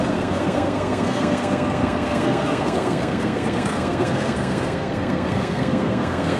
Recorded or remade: remade